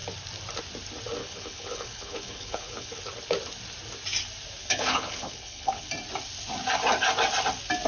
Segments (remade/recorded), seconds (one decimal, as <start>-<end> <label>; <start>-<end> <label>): 0.0-1.2 recorded; 1.2-3.0 remade; 3.0-4.6 recorded; 4.6-5.9 remade; 5.9-7.9 recorded